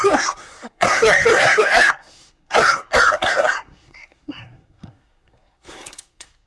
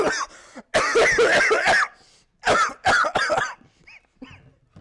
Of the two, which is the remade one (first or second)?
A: first